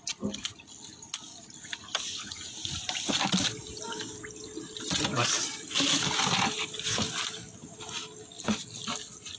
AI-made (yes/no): no